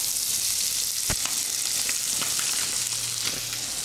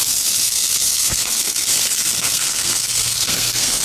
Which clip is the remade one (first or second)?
second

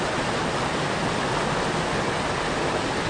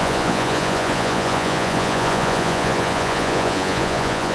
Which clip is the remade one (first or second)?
second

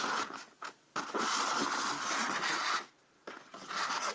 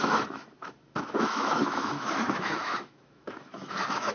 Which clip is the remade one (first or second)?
second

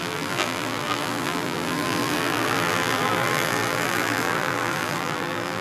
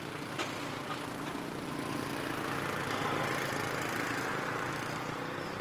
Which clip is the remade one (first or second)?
first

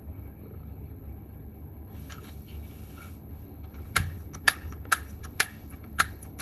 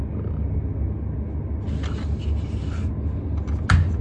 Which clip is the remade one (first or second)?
first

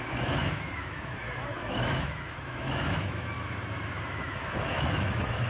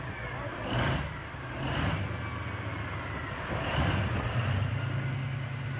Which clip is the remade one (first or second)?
first